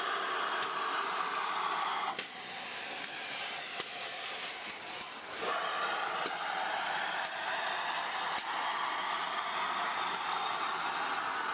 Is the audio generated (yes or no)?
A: no